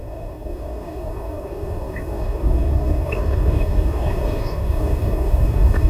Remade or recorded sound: remade